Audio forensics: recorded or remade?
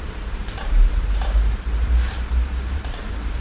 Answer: remade